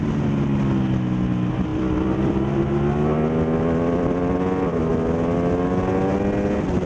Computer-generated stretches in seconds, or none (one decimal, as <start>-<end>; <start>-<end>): 1.7-2.6